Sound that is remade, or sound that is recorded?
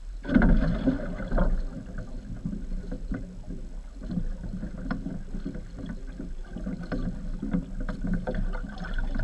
recorded